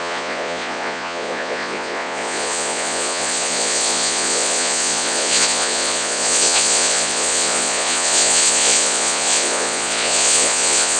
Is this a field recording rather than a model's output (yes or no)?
no